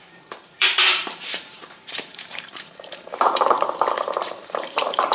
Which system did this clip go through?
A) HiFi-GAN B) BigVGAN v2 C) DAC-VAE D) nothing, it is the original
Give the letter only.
B